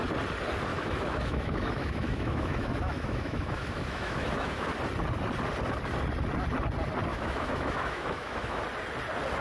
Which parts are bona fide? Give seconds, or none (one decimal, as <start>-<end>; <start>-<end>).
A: 0.0-0.7; 4.7-7.1; 8.6-9.4